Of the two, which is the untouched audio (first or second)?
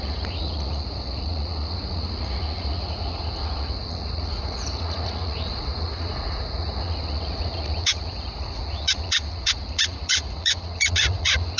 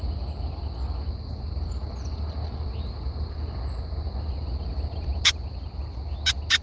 second